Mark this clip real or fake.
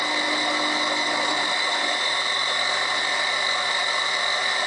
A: real